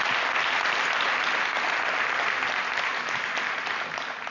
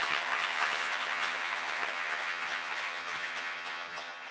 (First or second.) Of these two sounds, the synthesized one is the second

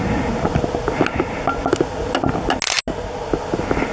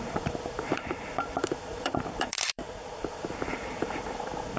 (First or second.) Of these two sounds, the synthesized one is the second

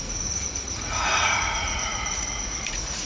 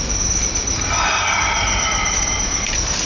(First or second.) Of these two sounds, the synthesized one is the first